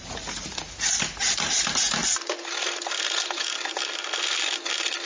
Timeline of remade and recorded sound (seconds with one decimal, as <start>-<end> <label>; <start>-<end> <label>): 0.0-5.1 recorded